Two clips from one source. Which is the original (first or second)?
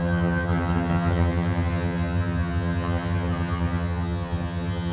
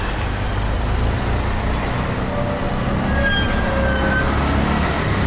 second